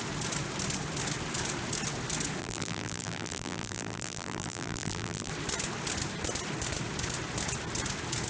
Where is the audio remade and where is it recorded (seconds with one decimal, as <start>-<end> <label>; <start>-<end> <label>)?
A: 0.0-2.4 recorded; 2.4-5.3 remade; 5.3-8.3 recorded